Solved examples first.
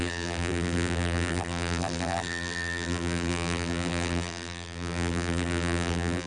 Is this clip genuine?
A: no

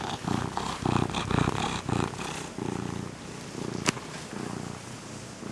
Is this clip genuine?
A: yes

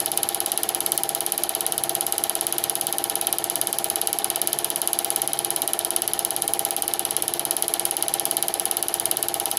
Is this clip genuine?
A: yes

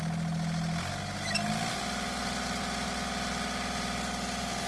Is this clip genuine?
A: yes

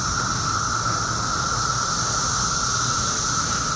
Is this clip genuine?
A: yes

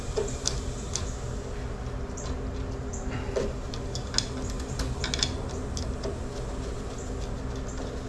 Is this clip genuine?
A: yes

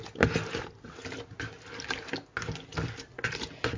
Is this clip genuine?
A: yes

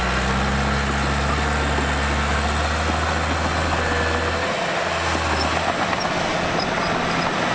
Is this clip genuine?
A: yes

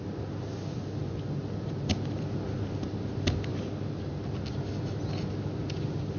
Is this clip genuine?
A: yes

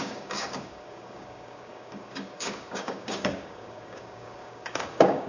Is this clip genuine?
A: no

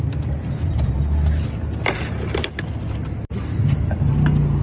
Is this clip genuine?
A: yes